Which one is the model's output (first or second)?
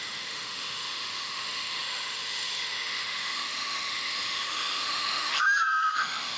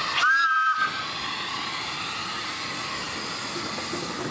first